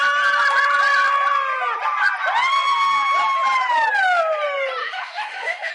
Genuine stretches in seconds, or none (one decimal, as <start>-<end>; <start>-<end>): 0.0-4.8